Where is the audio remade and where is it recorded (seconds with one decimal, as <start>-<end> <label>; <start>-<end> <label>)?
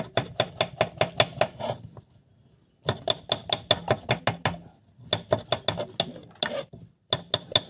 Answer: 0.0-7.7 recorded